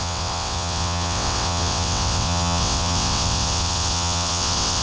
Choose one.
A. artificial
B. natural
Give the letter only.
A